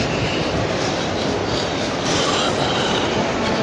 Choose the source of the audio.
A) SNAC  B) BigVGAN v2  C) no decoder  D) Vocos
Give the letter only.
B